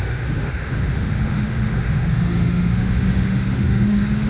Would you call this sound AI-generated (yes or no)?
yes